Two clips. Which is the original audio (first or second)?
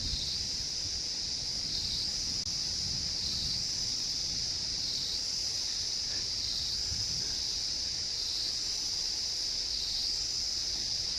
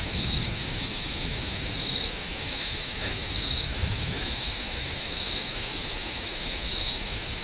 first